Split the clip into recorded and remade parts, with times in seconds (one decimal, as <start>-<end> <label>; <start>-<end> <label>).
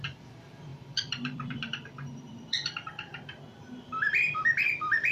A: 0.0-5.1 remade